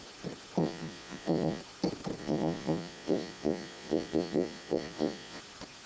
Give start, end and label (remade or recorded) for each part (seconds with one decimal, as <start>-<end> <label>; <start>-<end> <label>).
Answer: 0.0-0.6 recorded; 0.6-1.6 remade; 1.6-2.2 recorded; 2.2-5.4 remade; 5.4-5.9 recorded

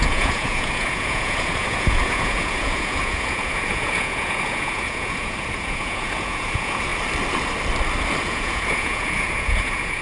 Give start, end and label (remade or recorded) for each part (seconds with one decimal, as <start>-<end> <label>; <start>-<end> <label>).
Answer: 0.0-6.9 remade; 6.9-8.2 recorded; 8.2-10.0 remade

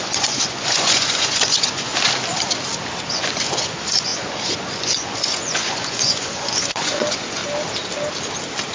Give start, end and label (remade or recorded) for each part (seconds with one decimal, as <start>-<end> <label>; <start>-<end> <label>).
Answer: 0.0-1.9 remade; 1.9-3.1 recorded; 3.1-7.4 remade; 7.4-8.7 recorded

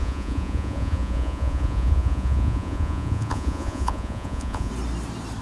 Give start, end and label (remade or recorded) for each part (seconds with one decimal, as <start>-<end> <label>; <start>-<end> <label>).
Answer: 0.0-4.7 remade; 4.7-5.4 recorded

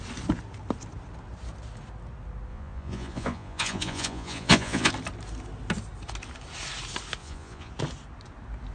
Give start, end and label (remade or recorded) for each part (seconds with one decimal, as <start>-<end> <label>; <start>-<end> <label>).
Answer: 0.0-2.5 recorded; 2.5-4.9 remade; 4.9-7.2 recorded; 7.2-7.7 remade; 7.7-8.7 recorded

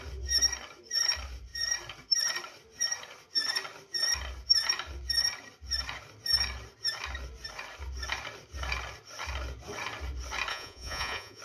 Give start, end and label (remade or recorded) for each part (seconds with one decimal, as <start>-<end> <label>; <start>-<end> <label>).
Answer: 0.0-10.5 recorded; 10.5-11.4 remade

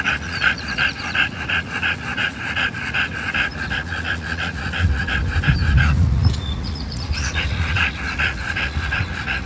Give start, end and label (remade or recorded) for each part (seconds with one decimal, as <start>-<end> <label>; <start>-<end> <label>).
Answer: 0.0-5.2 remade; 5.2-5.7 recorded; 5.7-9.5 remade

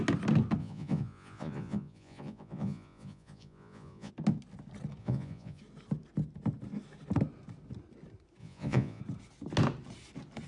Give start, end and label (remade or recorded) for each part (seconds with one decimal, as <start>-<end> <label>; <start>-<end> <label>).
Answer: 0.0-0.6 recorded; 0.6-4.1 remade; 4.1-5.0 recorded; 5.0-5.6 remade; 5.6-8.4 recorded; 8.4-9.0 remade; 9.0-10.5 recorded